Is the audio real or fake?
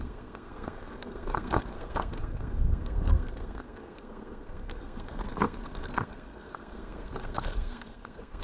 fake